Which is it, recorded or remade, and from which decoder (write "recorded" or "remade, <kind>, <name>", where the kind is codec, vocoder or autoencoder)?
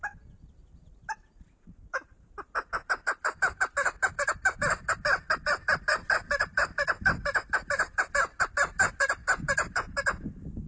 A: recorded